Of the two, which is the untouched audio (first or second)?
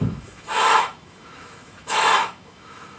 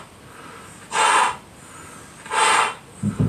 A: second